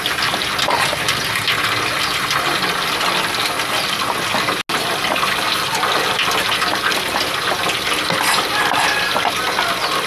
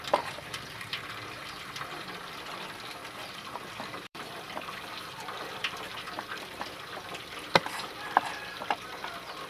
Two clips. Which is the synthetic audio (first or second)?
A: second